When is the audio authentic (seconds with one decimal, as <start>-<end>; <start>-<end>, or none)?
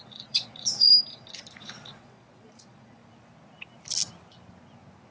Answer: 0.9-1.6; 3.0-5.1